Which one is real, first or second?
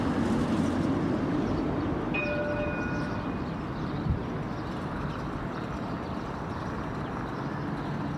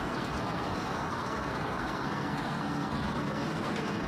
first